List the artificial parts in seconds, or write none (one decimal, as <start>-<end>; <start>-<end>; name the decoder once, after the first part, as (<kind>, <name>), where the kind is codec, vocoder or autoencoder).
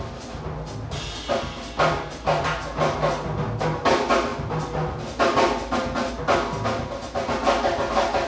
none